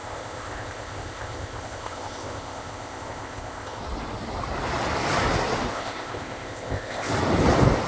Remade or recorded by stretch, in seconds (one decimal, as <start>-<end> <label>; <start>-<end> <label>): 0.0-3.8 remade; 3.8-5.7 recorded; 5.7-7.1 remade; 7.1-7.9 recorded